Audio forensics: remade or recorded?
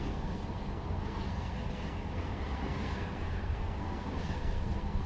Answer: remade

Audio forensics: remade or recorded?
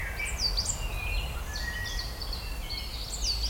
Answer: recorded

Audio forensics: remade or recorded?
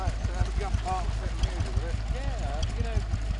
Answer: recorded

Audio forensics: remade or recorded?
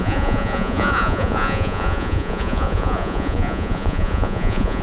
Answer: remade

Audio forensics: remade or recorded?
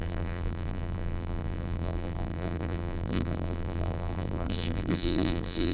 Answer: remade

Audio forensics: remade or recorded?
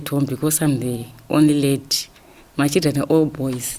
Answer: recorded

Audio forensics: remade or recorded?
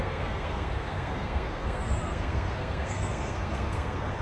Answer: remade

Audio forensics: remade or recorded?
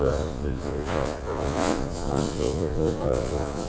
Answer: remade